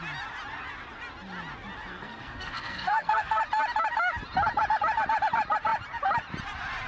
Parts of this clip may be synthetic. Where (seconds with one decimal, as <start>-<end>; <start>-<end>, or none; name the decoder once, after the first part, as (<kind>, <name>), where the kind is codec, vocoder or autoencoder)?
1.9-3.4 (codec, SNAC)